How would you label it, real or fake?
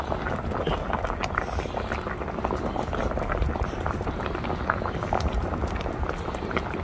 real